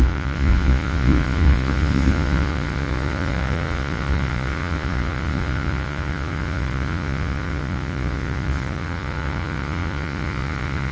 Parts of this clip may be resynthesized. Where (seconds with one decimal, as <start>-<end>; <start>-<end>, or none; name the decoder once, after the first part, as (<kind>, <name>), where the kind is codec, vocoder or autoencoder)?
0.0-10.9 (vocoder, Vocos)